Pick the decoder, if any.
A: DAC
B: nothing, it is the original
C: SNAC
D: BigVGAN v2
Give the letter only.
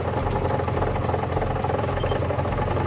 B